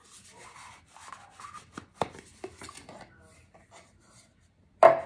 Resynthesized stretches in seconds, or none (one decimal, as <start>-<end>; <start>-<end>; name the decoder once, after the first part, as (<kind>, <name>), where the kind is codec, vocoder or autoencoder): none